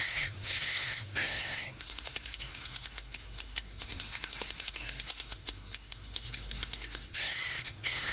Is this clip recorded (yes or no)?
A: no